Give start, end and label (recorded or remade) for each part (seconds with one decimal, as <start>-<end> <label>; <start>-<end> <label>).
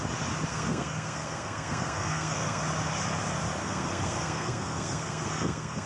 0.0-0.5 recorded; 0.5-2.6 remade; 2.6-3.6 recorded; 3.6-5.9 remade